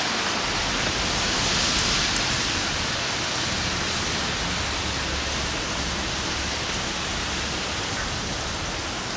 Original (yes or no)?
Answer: yes